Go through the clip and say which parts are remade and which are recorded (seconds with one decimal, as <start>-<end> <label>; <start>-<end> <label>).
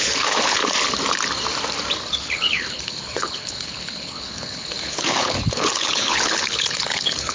0.0-0.6 remade; 0.6-2.1 recorded; 2.1-7.3 remade